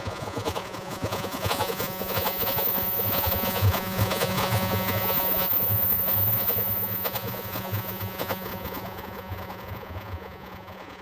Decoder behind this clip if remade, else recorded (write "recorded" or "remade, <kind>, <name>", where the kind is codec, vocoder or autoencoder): remade, vocoder, Vocos